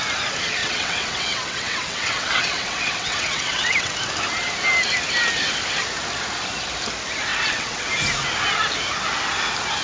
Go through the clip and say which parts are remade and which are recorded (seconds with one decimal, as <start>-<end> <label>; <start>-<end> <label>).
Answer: 0.0-0.6 recorded; 0.6-3.9 remade; 3.9-7.3 recorded; 7.3-7.9 remade; 7.9-9.8 recorded